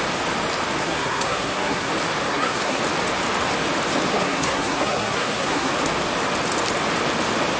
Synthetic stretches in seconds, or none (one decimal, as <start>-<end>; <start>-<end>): 0.8-1.9; 2.3-2.8; 4.1-5.7